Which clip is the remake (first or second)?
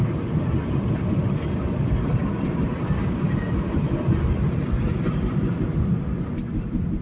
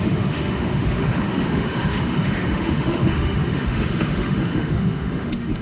second